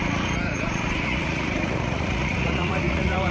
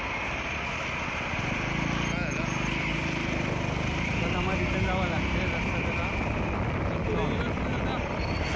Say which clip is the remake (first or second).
first